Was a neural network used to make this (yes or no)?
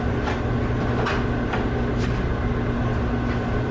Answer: no